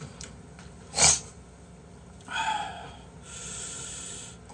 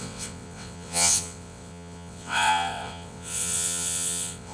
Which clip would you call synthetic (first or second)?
second